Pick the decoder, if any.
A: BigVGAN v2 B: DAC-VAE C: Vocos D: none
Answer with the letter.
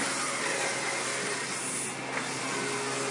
D